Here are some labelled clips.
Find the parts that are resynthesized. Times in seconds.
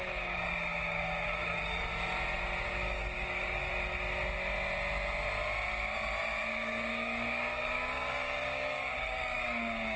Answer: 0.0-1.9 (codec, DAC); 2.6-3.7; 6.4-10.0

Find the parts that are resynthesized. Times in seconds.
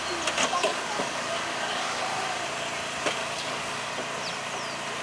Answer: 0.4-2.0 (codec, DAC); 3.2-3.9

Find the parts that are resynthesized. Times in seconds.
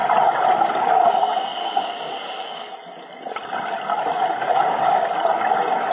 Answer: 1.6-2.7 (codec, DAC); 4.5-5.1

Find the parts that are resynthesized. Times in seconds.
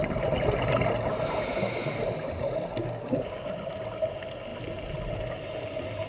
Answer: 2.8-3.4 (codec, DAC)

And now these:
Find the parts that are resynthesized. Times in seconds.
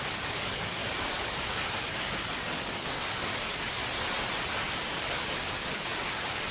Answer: 0.0-3.8 (codec, DAC); 4.9-6.5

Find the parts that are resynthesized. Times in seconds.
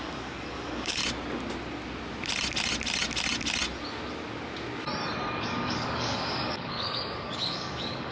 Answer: 0.0-1.0 (codec, DAC); 5.4-8.1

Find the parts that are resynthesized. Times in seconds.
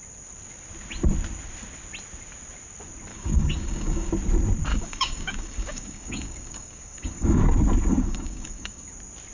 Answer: 3.1-4.1 (codec, DAC); 4.7-7.4; 7.9-8.9